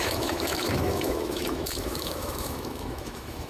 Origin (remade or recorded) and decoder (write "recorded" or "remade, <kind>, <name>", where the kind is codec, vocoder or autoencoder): remade, autoencoder, DAC-VAE